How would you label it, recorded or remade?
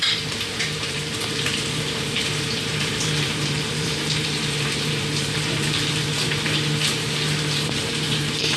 remade